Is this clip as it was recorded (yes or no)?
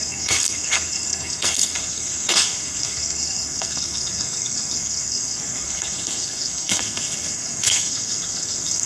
no